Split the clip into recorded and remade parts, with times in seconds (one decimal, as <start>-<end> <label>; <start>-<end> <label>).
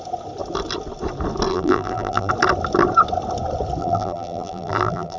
0.0-1.5 recorded; 1.5-2.3 remade; 2.3-3.8 recorded; 3.8-5.2 remade